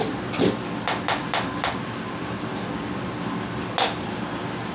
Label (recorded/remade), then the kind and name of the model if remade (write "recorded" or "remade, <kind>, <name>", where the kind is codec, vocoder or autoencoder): recorded